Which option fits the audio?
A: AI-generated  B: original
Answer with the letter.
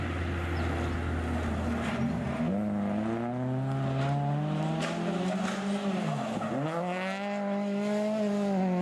B